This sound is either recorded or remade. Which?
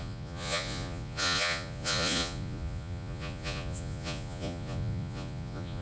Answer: remade